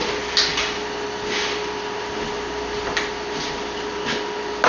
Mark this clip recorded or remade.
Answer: recorded